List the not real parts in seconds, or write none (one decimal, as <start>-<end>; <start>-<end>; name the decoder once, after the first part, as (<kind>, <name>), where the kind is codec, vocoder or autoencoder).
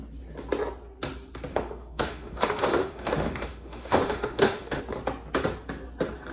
1.5-4.8 (autoencoder, DAC-VAE)